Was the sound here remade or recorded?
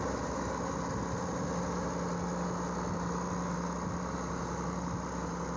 recorded